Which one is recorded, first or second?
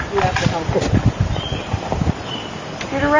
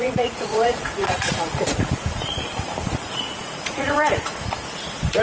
first